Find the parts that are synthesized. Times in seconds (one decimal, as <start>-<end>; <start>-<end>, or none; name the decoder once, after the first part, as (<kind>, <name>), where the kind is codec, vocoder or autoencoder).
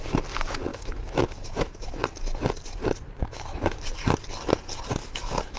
0.7-2.0 (autoencoder, DAC-VAE); 3.2-3.8; 5.0-5.6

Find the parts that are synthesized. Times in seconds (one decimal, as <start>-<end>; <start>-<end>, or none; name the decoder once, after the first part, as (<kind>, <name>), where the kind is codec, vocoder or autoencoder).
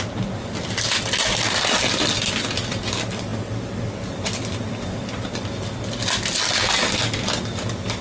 none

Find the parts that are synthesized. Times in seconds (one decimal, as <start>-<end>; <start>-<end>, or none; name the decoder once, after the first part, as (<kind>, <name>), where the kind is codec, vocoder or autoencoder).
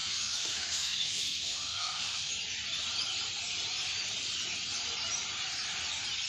0.0-2.3 (autoencoder, DAC-VAE)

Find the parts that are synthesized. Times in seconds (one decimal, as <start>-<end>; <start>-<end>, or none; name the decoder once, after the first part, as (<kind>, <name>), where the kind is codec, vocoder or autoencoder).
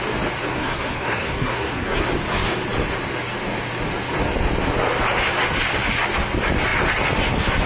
0.5-2.0 (codec, SNAC)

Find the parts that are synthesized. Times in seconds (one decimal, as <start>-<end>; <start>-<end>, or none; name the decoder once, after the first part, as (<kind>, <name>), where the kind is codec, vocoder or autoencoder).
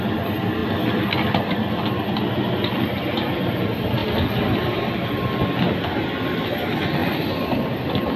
none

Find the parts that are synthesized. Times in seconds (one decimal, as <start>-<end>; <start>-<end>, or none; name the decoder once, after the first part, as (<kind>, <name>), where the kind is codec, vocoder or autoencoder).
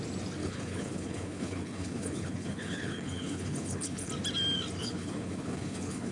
0.4-4.1 (codec, HILCodec); 4.8-6.1